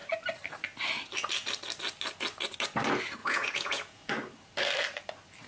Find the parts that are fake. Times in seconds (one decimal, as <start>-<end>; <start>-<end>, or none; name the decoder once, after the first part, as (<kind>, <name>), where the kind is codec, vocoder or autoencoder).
3.2-4.1 (vocoder, Vocos)

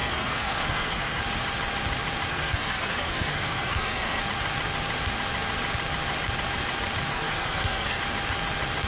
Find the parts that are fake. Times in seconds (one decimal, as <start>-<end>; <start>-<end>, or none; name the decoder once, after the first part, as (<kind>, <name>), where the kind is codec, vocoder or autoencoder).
0.0-1.2 (codec, SNAC); 2.3-4.2; 7.1-8.0

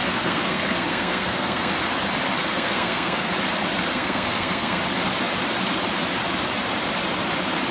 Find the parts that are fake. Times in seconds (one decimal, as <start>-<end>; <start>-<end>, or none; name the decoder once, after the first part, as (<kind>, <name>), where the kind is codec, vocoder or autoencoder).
0.0-1.7 (codec, SNAC); 2.5-3.3; 3.9-4.8

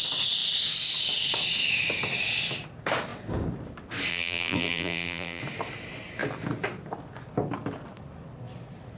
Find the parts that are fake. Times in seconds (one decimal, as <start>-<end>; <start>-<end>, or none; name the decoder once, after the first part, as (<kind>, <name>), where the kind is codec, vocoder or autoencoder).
4.1-5.4 (vocoder, BigVGAN v2)